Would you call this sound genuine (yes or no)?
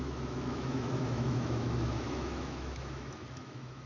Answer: no